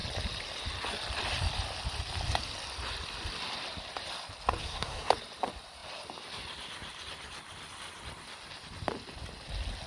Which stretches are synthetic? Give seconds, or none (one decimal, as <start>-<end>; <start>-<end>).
4.6-5.1